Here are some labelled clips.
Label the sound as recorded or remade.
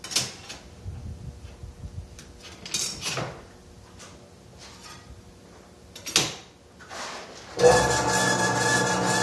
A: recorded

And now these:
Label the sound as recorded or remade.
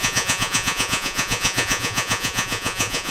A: remade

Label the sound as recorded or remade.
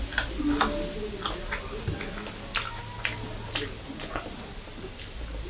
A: recorded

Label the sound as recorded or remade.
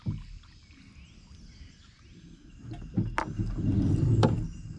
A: recorded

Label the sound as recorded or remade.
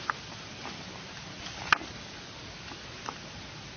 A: recorded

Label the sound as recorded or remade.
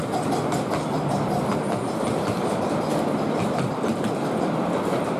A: recorded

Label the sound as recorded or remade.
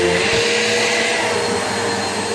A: recorded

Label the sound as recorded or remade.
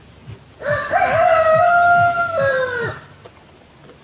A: recorded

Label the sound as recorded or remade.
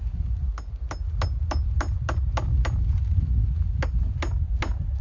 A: recorded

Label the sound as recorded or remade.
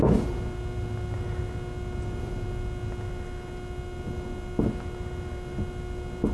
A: recorded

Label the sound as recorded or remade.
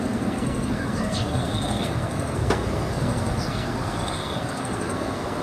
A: remade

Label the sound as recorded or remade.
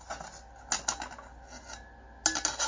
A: recorded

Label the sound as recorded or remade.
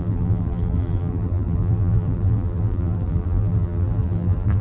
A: remade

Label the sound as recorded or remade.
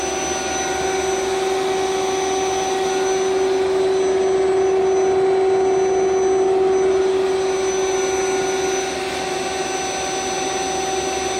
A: recorded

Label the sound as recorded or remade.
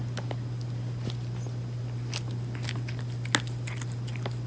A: recorded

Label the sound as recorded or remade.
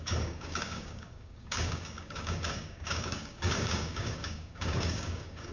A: remade